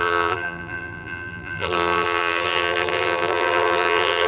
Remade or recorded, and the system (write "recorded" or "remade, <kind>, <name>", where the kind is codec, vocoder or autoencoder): remade, vocoder, BigVGAN v2